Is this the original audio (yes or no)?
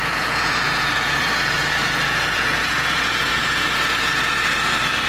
no